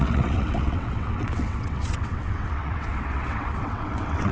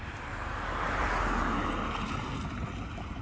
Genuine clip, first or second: second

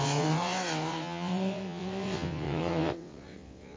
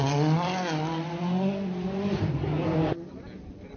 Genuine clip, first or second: second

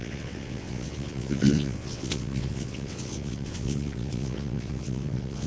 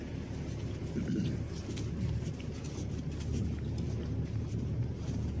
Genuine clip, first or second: second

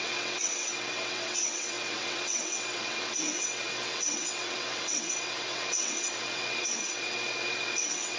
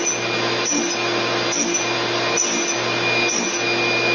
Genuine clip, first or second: second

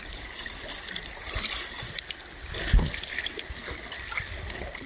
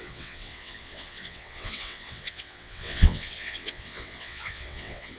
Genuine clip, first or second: first